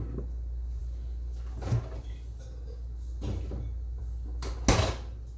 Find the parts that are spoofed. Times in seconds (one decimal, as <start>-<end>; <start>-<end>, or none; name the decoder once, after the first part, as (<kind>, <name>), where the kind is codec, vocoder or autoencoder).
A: none